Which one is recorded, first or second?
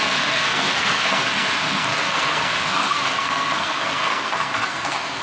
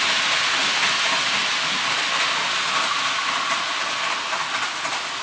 second